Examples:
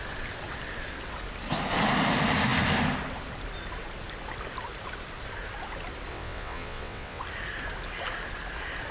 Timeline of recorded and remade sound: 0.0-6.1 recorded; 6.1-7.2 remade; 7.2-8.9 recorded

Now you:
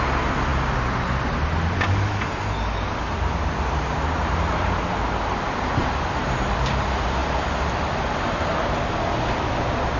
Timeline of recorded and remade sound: 0.0-10.0 recorded